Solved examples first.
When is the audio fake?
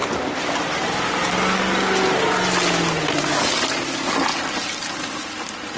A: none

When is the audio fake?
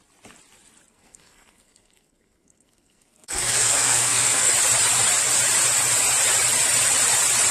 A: 0.9-4.5 (codec, SNAC)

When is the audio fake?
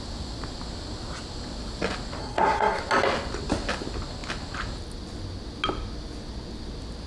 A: 2.2-2.8 (codec, SNAC)